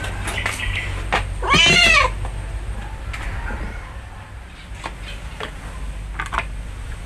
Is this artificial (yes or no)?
no